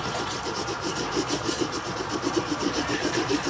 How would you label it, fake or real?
fake